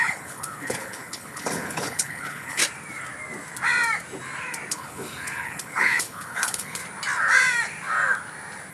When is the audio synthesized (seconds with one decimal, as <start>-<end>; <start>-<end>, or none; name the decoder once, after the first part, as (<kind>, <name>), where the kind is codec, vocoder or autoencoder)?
0.0-2.6 (codec, HILCodec); 4.7-6.8